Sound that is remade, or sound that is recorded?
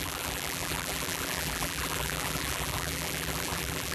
remade